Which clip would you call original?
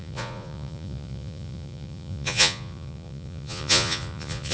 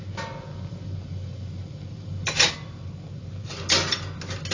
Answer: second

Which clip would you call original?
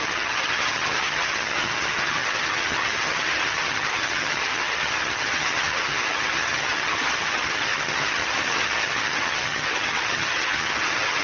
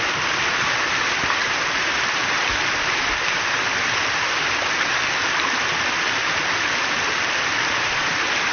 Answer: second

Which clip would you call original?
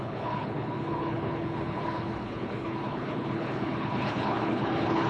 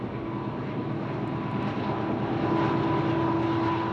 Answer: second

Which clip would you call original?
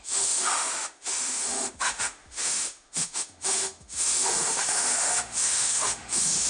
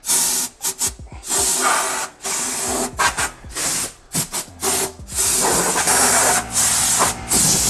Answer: second